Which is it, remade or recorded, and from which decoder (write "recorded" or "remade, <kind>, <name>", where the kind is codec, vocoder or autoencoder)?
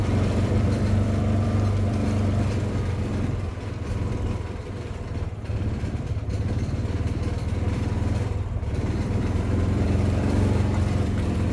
remade, vocoder, BigVGAN v2